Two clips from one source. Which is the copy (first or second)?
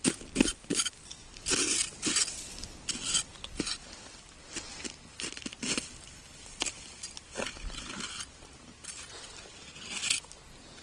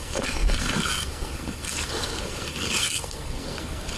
second